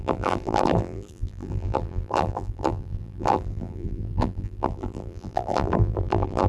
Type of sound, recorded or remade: remade